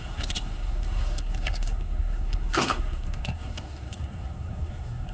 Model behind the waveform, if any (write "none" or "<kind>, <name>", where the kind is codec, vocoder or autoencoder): codec, SNAC